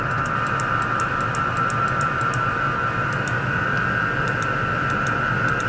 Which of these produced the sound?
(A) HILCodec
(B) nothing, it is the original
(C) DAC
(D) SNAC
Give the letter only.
B